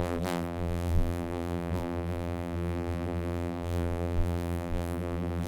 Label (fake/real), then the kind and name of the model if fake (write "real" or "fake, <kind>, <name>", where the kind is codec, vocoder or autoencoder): fake, vocoder, BigVGAN v2